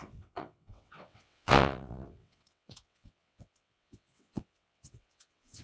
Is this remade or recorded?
remade